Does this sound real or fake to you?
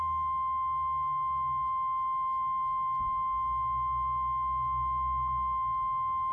real